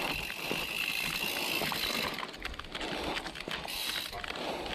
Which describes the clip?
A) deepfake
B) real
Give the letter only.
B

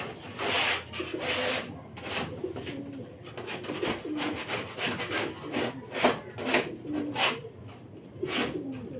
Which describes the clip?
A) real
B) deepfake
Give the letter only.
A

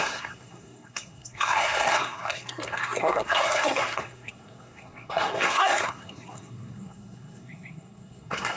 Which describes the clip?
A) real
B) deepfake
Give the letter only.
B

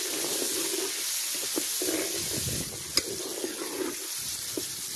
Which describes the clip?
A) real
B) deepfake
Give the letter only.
A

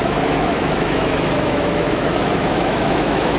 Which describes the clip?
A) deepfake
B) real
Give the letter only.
A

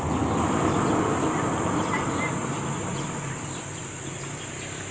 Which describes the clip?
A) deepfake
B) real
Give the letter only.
B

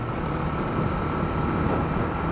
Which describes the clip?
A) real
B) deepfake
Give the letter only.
A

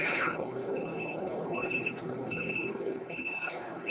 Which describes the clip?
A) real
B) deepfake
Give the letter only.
B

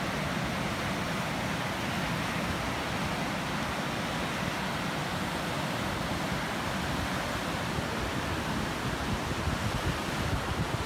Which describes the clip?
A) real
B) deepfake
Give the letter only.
A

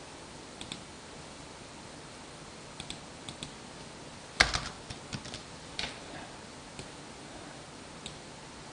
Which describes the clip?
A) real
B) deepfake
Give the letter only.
A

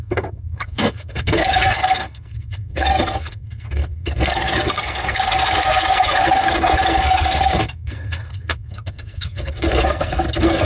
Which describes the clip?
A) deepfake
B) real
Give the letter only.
A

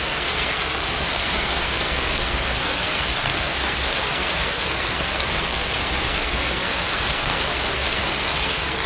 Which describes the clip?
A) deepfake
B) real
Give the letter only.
A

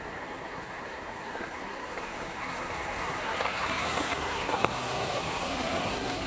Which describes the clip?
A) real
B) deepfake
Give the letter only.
B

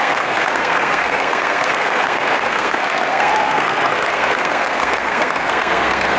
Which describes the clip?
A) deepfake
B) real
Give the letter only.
A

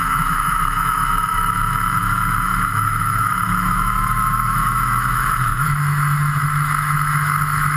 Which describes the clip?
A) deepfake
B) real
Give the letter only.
A